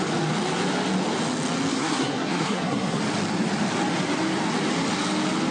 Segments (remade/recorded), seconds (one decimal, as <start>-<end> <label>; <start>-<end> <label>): 0.0-1.7 recorded; 1.7-3.0 remade; 3.0-5.5 recorded

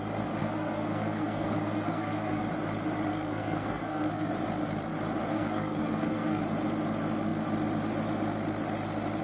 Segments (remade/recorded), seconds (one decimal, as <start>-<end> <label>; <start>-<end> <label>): 0.0-0.4 recorded; 0.4-2.4 remade; 2.4-3.1 recorded; 3.1-4.3 remade; 4.3-5.3 recorded; 5.3-6.4 remade; 6.4-9.2 recorded